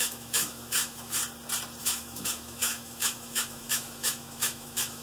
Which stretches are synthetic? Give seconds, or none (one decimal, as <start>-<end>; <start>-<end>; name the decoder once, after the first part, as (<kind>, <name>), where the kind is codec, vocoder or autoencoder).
0.0-1.2 (autoencoder, DAC-VAE); 1.8-5.0